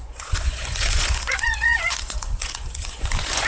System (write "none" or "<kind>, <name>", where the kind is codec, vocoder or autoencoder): vocoder, Vocos